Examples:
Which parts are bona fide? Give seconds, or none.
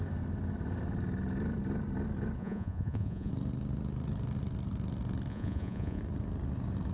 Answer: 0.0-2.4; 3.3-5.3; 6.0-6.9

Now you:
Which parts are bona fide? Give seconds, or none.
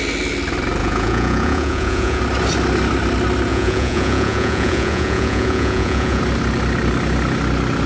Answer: 0.0-0.8; 2.2-3.5; 6.2-7.9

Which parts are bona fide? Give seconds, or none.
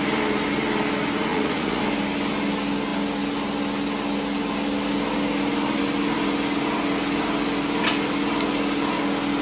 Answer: 0.0-1.3; 1.8-9.4